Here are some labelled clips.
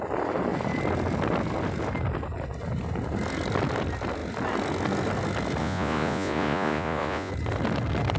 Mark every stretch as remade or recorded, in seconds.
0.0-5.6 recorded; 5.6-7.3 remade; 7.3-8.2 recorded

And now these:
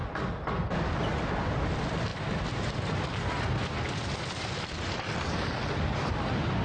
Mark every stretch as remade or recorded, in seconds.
0.0-2.1 recorded; 2.1-6.1 remade; 6.1-6.6 recorded

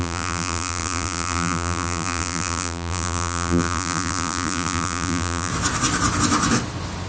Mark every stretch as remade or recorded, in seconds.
0.0-5.5 remade; 5.5-7.1 recorded

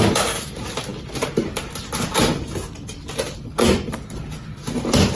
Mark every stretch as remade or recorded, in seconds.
0.0-5.2 recorded